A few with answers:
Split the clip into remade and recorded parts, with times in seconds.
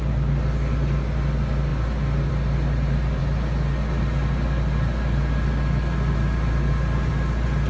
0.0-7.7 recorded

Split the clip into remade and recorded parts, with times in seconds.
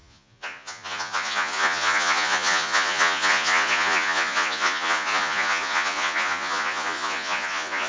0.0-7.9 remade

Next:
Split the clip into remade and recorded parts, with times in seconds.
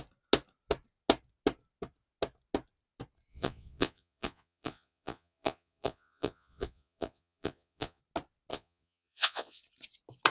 0.0-3.3 recorded; 3.3-8.0 remade; 8.0-8.5 recorded; 8.5-9.6 remade; 9.6-10.3 recorded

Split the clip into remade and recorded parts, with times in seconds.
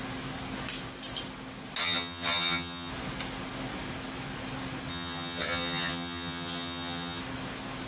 0.0-1.8 recorded; 1.8-2.9 remade; 2.9-4.9 recorded; 4.9-7.2 remade; 7.2-7.9 recorded